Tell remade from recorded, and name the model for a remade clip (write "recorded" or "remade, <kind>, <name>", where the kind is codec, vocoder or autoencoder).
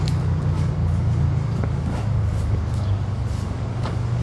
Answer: remade, codec, DAC